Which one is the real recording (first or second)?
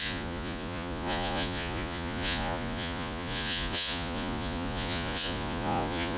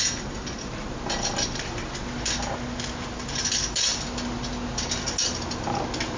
second